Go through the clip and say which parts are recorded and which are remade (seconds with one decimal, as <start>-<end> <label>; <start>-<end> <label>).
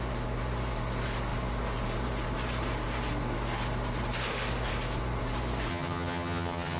0.0-5.7 recorded; 5.7-6.8 remade